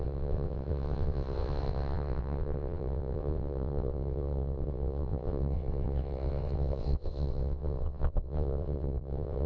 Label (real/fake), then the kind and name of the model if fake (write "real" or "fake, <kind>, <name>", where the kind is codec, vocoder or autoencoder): fake, vocoder, WaveNeXt